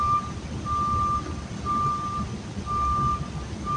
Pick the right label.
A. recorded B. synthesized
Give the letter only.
A